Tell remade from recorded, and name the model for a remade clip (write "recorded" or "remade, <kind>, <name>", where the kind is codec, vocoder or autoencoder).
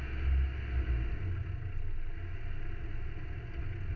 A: recorded